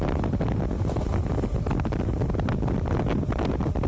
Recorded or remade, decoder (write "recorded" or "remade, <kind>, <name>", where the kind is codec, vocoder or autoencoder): recorded